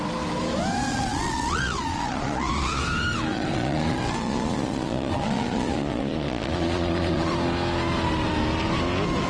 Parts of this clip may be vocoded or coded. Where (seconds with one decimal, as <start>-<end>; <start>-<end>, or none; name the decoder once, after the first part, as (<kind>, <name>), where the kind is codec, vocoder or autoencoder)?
0.9-2.8 (vocoder, Vocos); 3.3-7.3

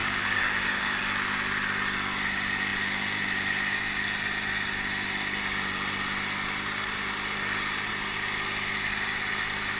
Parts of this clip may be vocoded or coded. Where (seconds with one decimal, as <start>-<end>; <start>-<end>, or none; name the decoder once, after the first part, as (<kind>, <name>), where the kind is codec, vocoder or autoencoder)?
0.0-1.0 (codec, DAC)

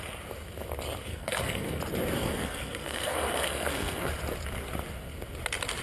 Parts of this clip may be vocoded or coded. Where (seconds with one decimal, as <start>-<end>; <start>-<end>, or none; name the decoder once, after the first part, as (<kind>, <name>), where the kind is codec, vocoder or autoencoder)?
1.1-1.8 (codec, SNAC); 2.2-4.1

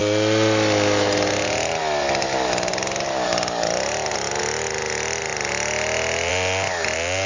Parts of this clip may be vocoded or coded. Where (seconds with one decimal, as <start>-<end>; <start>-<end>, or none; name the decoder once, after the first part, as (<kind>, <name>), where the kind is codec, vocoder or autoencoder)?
none

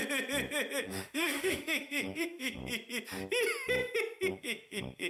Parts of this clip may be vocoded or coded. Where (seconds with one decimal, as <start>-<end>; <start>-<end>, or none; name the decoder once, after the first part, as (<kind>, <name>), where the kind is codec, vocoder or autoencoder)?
0.8-2.6 (autoencoder, DAC-VAE); 4.3-5.1

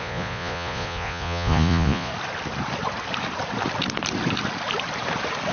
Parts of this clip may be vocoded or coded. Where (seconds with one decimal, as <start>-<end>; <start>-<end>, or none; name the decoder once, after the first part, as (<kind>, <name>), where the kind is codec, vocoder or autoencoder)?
0.0-2.1 (vocoder, Vocos)

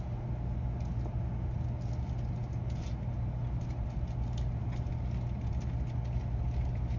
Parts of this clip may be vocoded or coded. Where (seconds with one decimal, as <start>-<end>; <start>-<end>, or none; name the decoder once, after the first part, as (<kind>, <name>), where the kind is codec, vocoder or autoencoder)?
none